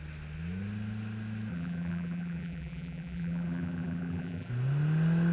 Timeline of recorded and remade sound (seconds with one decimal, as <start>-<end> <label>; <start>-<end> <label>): 0.0-1.5 recorded; 1.5-4.5 remade; 4.5-5.3 recorded